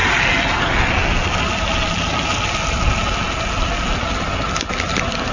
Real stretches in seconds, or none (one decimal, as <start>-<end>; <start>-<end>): 0.0-5.3